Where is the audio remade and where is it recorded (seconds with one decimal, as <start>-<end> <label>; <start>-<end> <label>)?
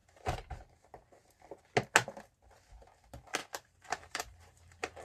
0.0-0.6 remade; 0.6-3.4 recorded; 3.4-5.0 remade